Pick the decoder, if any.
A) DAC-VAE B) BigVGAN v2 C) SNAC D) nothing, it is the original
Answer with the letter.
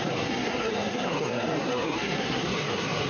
C